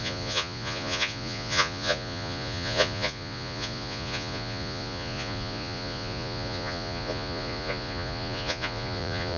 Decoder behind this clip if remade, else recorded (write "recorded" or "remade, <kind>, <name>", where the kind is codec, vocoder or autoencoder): remade, vocoder, Vocos